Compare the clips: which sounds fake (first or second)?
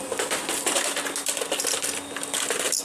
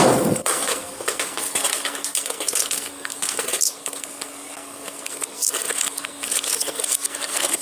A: second